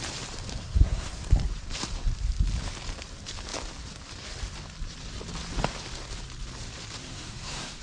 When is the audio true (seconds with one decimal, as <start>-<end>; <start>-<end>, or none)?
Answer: 0.0-0.5; 1.2-7.0